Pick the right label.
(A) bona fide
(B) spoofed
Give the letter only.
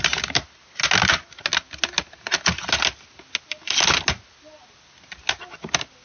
A